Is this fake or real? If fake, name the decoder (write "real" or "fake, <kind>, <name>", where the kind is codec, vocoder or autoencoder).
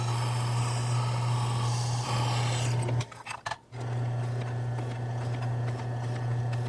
real